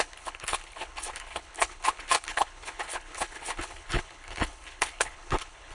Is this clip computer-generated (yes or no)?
yes